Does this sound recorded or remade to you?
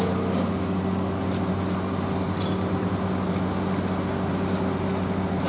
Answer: recorded